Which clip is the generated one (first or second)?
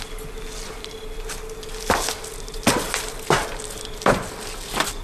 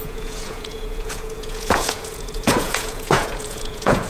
second